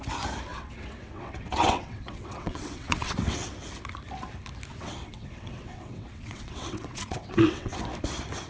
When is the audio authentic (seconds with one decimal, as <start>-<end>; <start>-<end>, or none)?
0.0-0.5; 3.5-4.7; 7.8-8.5